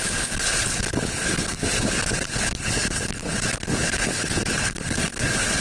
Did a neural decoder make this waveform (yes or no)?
yes